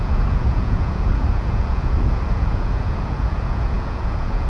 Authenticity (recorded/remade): remade